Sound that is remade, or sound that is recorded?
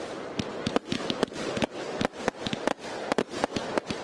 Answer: recorded